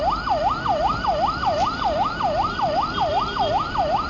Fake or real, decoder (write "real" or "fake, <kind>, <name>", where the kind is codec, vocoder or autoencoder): real